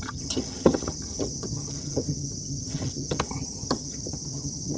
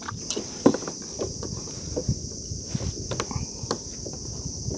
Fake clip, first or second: first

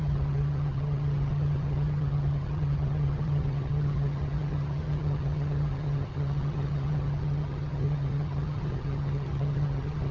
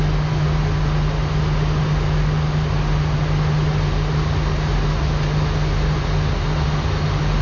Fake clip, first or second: first